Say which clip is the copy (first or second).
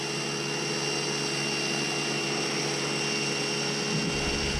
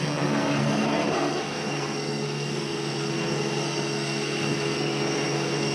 second